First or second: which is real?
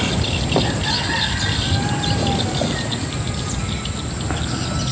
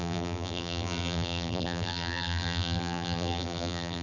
first